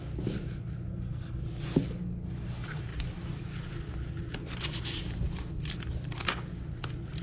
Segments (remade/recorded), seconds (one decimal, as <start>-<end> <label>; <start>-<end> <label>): 0.0-0.9 recorded; 0.9-1.4 remade; 1.4-7.2 recorded